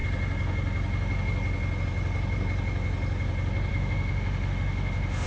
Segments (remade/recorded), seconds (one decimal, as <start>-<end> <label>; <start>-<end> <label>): 0.0-3.7 recorded; 3.7-5.3 remade